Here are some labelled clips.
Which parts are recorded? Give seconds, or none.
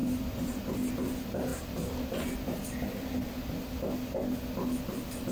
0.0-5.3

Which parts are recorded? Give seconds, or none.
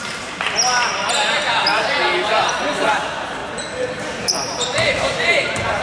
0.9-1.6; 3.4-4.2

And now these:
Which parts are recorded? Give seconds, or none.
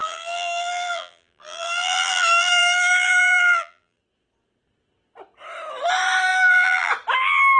4.0-6.3; 6.9-7.6